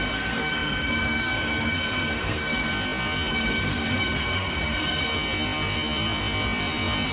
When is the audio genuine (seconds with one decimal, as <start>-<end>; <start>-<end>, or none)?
2.7-3.3; 5.1-7.1